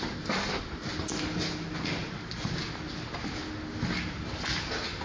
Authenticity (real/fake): real